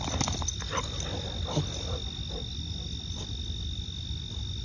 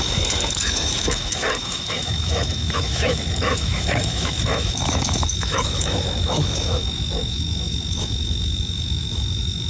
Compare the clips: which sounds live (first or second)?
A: first